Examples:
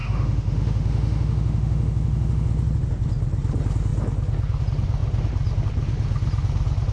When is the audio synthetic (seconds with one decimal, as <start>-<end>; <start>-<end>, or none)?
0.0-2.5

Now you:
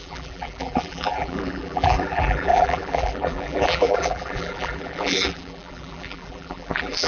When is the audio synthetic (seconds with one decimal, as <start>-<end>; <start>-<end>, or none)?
0.0-7.1

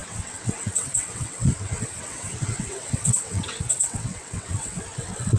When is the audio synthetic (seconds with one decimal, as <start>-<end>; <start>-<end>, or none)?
0.0-5.4

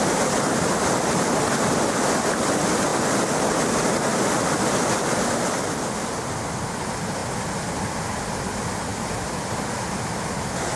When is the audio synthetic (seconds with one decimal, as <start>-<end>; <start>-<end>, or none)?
4.1-5.3; 7.2-8.0; 8.9-9.6

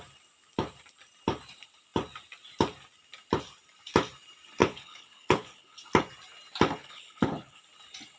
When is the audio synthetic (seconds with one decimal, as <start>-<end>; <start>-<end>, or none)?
4.6-5.8; 6.8-7.6

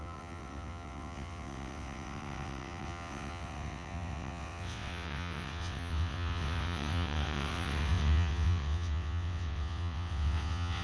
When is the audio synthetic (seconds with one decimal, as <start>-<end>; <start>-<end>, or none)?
0.0-10.8

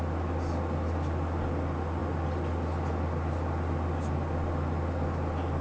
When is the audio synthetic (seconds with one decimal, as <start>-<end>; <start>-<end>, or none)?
none